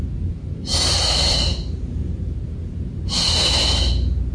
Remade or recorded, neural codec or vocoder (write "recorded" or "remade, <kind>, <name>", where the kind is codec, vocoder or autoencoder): remade, vocoder, BigVGAN v2